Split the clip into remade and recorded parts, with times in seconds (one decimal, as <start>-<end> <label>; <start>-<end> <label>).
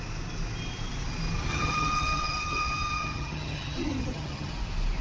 0.0-1.5 recorded; 1.5-4.5 remade; 4.5-5.0 recorded